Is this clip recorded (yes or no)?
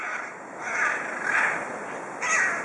yes